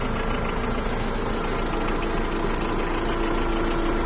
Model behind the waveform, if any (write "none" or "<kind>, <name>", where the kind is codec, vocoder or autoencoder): none